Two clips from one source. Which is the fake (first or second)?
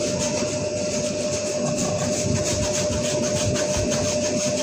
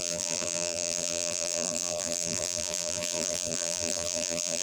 second